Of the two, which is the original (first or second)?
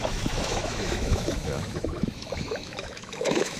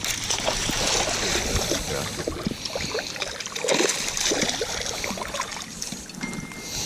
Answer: second